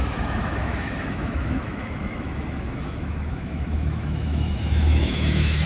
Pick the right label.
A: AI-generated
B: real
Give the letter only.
A